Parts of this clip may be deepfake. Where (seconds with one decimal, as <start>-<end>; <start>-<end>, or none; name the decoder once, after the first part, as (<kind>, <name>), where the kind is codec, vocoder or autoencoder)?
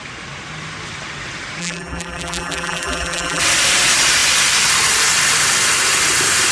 1.6-3.4 (vocoder, BigVGAN v2)